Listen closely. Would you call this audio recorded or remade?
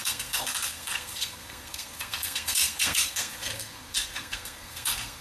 remade